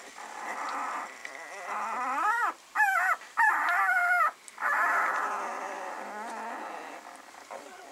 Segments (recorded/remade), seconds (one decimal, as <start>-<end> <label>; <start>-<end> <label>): 0.0-7.9 recorded